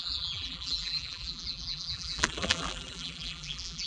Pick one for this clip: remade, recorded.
remade